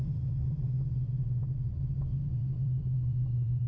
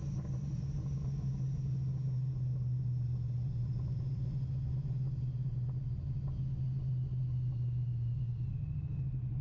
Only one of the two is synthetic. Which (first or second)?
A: first